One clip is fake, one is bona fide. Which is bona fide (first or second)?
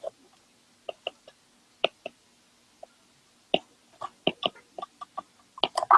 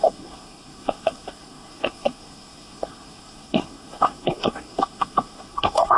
first